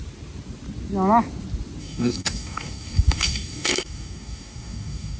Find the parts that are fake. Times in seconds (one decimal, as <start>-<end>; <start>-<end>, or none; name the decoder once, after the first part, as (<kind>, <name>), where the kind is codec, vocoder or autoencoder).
1.8-5.2 (codec, DAC)